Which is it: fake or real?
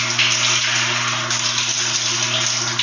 real